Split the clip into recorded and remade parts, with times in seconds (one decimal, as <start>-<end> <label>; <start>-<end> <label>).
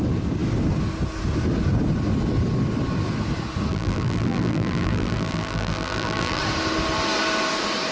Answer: 0.0-3.7 recorded; 3.7-6.4 remade; 6.4-7.9 recorded